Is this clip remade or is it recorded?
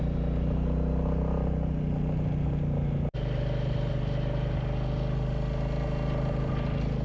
recorded